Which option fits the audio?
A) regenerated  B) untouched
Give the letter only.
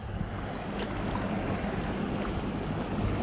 B